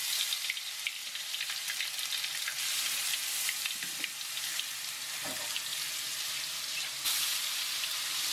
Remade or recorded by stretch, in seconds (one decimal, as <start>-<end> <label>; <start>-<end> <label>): 0.0-1.0 recorded; 1.0-1.7 remade; 1.7-5.7 recorded; 5.7-7.9 remade; 7.9-8.3 recorded